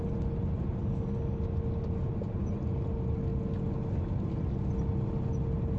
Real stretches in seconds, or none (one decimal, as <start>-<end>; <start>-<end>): 0.0-0.8; 1.4-5.8